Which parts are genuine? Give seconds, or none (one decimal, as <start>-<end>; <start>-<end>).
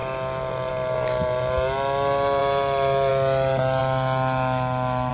0.0-5.1